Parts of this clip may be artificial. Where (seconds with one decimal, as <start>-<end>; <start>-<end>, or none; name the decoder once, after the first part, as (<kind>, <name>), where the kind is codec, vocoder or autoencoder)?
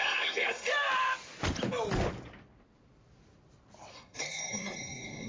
0.0-0.7 (codec, SNAC); 3.9-5.3